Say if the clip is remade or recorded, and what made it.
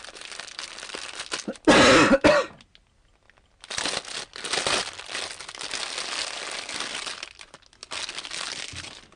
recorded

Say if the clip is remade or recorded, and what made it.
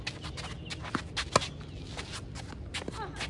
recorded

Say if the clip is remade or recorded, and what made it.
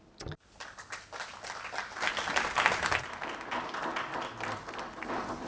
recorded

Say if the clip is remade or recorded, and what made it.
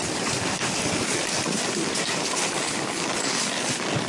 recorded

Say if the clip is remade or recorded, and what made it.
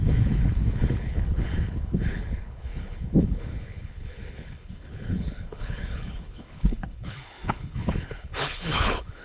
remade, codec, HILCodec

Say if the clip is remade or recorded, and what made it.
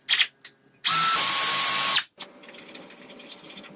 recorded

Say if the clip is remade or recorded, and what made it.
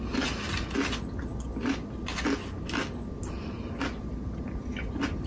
recorded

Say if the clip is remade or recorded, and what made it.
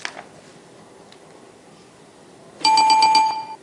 recorded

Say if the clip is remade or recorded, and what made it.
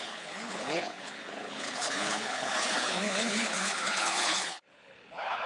remade, codec, HILCodec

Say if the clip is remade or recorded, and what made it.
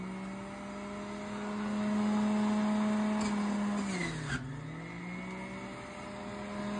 recorded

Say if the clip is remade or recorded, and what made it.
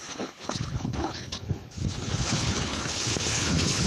remade, codec, HILCodec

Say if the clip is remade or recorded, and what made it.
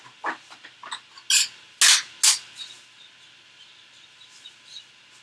recorded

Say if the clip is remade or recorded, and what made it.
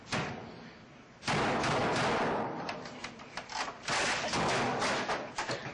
recorded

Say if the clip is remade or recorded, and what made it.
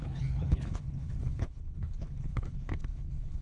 remade, codec, HILCodec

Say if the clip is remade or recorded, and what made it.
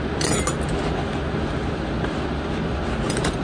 recorded